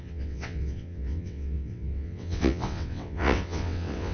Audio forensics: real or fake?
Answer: fake